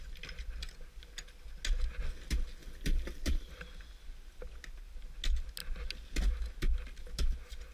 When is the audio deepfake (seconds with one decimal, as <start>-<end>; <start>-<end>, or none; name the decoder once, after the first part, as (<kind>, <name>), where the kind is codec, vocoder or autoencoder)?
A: 2.6-3.6 (vocoder, BigVGAN v2)